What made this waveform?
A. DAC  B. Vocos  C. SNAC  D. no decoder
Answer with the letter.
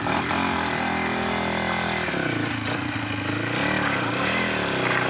D